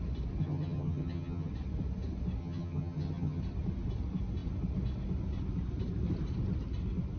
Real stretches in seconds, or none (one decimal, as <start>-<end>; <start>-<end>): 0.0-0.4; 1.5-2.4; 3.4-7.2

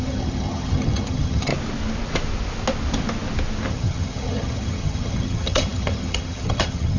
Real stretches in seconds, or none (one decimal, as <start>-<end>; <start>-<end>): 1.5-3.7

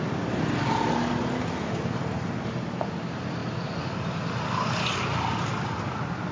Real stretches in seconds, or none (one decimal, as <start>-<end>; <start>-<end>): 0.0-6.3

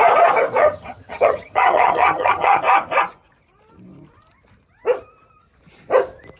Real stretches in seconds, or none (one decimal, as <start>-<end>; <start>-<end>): 0.0-0.6; 2.6-6.4